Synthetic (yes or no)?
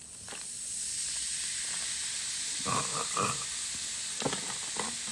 no